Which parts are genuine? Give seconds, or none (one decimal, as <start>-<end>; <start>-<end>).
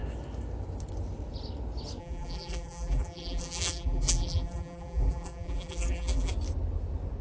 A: 0.0-2.0; 6.3-7.2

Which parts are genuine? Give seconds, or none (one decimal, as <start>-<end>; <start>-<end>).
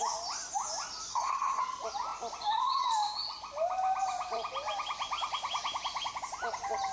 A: 0.0-1.1; 1.6-6.9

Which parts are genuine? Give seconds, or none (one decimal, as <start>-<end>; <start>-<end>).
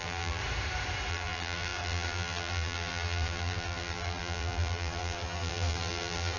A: 0.4-1.1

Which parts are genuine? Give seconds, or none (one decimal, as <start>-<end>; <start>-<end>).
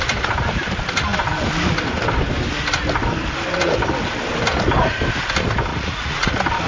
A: 0.0-5.7; 6.3-6.7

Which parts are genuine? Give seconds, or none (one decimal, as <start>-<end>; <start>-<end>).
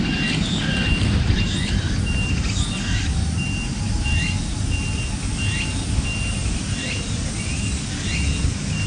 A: 0.0-8.9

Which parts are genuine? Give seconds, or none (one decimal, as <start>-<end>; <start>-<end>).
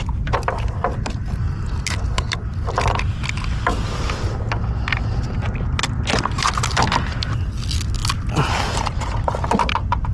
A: 0.0-10.1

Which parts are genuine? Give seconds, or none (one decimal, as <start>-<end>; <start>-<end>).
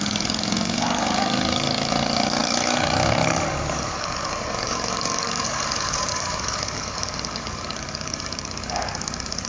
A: none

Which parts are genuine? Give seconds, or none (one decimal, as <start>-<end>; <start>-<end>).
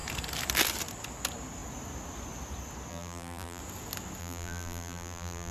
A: 0.0-2.9; 3.6-4.2